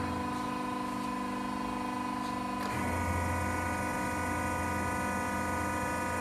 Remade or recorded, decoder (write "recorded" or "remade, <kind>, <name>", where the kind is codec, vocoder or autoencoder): recorded